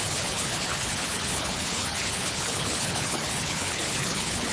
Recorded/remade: remade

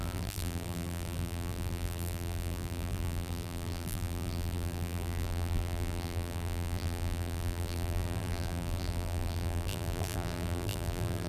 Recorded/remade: remade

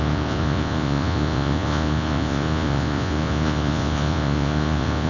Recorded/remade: remade